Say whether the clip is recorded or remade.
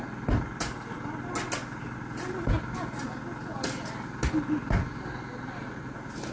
recorded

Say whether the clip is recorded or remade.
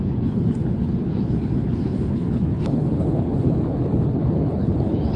remade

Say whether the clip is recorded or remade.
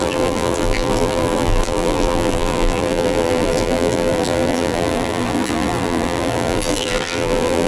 remade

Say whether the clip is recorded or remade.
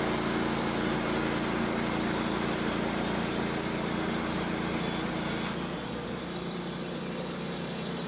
recorded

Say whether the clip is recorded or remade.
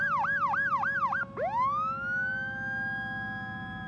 recorded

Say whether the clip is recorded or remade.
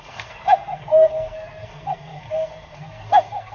remade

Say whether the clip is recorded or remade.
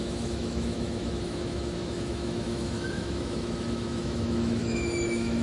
remade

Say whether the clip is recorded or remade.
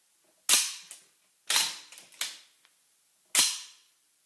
recorded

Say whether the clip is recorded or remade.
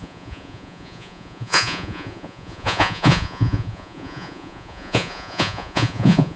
remade